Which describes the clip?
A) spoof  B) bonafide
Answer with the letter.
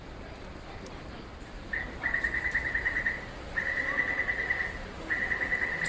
B